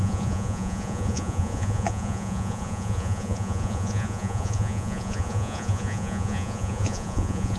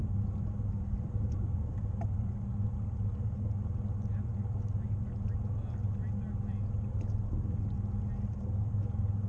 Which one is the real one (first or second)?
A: second